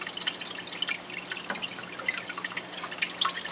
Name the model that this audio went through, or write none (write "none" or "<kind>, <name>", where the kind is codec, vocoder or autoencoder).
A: none